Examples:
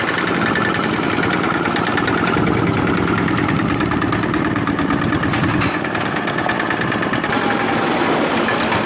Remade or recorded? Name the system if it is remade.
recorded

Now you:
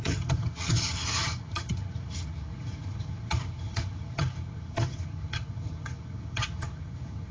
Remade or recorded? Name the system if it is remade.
remade, vocoder, HiFi-GAN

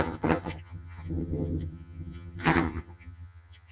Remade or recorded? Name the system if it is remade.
remade, vocoder, HiFi-GAN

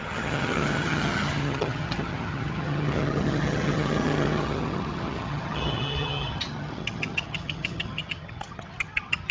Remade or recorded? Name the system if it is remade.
remade, vocoder, HiFi-GAN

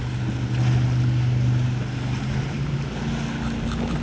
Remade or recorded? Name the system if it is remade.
recorded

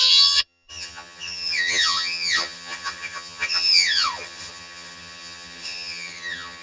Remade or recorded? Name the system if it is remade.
remade, vocoder, HiFi-GAN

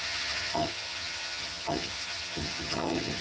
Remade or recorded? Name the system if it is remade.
remade, vocoder, HiFi-GAN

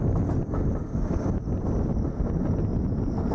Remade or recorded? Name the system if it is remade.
recorded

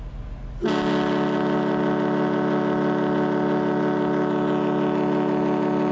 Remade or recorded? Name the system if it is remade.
recorded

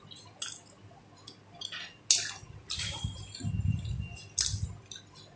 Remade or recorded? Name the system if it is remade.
recorded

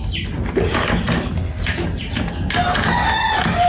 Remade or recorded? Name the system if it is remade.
recorded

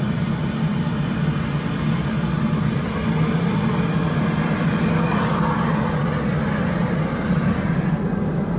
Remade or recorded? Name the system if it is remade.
recorded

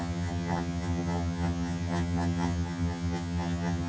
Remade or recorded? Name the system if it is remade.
remade, vocoder, HiFi-GAN